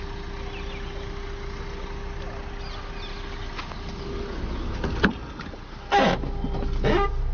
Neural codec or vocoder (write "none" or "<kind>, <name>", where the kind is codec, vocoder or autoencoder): none